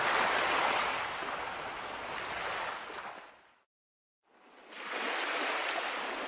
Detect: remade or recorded recorded